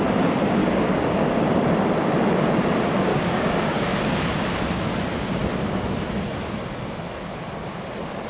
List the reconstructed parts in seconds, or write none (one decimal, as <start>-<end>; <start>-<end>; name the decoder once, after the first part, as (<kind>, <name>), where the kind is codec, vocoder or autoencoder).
0.6-1.4 (codec, DAC); 3.1-3.6

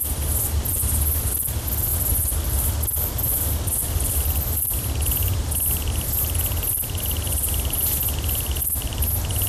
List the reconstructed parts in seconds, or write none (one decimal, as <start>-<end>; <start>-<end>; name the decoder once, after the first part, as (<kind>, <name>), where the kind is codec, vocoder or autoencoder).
none